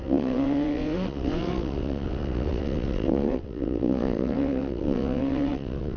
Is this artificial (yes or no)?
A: yes